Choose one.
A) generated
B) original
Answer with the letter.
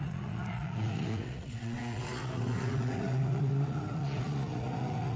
A